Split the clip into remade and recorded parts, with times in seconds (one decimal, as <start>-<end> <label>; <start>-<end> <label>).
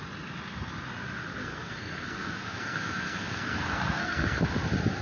0.0-1.4 recorded; 1.4-4.4 remade; 4.4-5.0 recorded